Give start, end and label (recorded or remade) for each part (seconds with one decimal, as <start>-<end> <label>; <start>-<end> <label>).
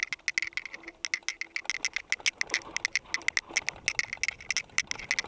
0.0-5.3 recorded